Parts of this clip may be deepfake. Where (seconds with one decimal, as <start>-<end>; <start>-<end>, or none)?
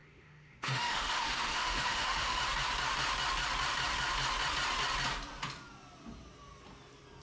0.0-2.4